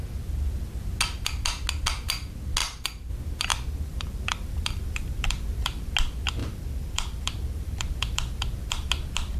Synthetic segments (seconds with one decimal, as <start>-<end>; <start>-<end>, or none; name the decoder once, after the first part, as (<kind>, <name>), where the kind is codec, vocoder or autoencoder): 2.6-3.1 (vocoder, BigVGAN v2); 3.5-5.9; 6.4-8.9